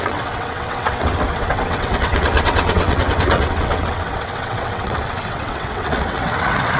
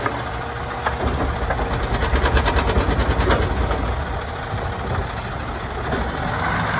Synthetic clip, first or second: first